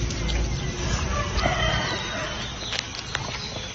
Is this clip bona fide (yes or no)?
yes